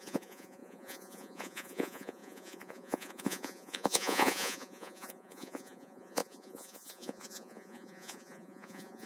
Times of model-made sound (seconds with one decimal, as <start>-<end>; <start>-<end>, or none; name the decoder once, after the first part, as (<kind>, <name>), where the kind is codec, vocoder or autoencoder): 0.0-9.1 (vocoder, Vocos)

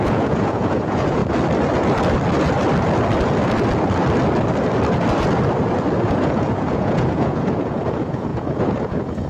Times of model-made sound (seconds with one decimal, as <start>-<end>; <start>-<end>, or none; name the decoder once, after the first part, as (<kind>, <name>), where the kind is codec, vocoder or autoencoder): 0.0-1.2 (vocoder, Vocos); 6.1-9.3

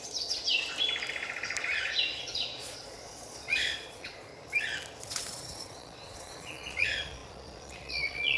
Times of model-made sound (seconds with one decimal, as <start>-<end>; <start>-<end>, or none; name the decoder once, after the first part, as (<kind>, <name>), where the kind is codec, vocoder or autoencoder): 0.0-0.4 (vocoder, Vocos); 2.2-4.3; 5.0-8.4

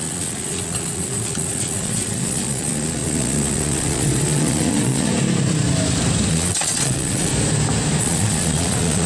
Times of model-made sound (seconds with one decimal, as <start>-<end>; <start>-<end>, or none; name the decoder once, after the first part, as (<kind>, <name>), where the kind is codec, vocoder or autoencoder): 0.0-5.1 (vocoder, Vocos); 6.3-7.3; 8.0-9.1

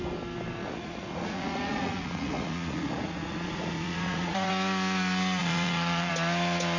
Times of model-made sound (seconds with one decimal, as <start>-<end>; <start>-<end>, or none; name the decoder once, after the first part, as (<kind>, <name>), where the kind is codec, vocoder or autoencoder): 0.6-4.5 (vocoder, Vocos); 5.4-6.1

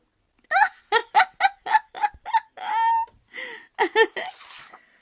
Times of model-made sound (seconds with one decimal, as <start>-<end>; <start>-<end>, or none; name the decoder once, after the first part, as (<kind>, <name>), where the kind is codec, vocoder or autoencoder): none